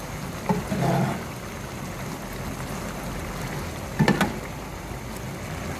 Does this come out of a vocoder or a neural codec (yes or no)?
no